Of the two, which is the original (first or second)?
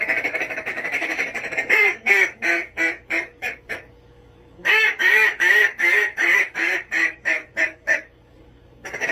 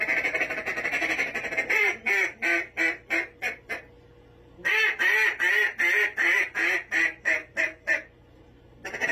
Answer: second